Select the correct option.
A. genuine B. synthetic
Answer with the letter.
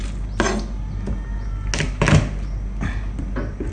A